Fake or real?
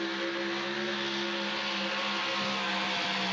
real